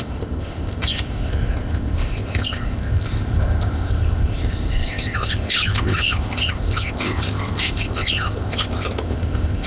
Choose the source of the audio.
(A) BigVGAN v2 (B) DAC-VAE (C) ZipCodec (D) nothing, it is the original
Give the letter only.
C